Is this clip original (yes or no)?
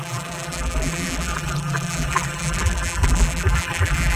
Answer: no